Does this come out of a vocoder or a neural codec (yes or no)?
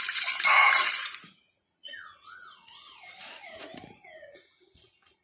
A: yes